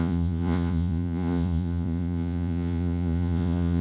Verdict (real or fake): fake